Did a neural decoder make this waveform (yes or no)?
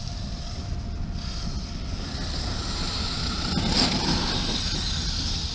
no